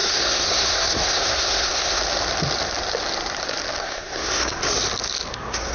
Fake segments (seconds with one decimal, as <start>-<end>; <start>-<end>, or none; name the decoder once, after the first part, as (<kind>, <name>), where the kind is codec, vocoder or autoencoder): 0.0-2.0 (codec, SNAC); 3.8-4.6; 5.3-5.7